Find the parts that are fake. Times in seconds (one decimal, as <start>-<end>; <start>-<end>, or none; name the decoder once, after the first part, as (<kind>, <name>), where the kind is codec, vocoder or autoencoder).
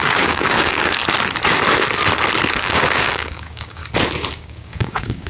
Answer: 0.0-1.0 (codec, DAC); 2.5-3.8; 4.3-5.3